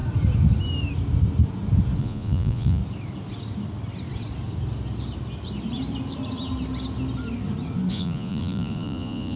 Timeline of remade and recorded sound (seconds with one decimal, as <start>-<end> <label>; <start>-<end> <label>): 0.0-2.0 recorded; 2.0-2.8 remade; 2.8-7.9 recorded; 7.9-9.4 remade